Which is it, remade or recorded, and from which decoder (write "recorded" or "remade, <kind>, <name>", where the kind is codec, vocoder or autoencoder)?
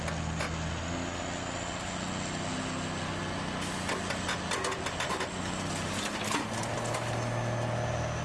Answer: recorded